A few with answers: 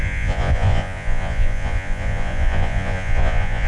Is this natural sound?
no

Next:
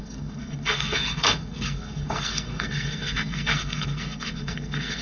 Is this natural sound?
no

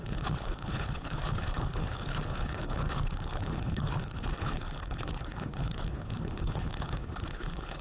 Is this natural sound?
no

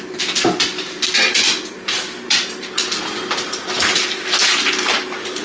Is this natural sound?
yes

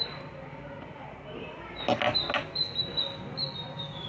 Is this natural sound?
yes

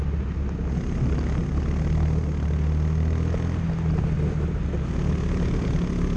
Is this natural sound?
yes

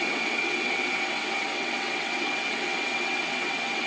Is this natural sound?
no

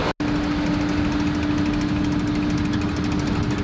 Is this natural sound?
yes